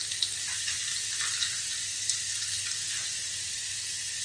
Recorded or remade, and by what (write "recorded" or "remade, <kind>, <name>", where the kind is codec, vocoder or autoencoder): recorded